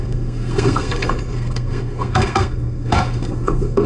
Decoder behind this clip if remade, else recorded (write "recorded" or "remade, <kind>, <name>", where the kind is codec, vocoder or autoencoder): remade, codec, SNAC